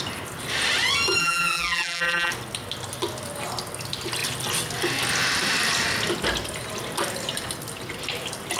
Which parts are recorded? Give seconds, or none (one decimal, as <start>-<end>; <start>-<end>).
0.0-1.2; 2.3-8.6